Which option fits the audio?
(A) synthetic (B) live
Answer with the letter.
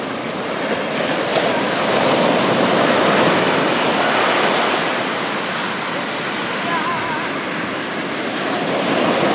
B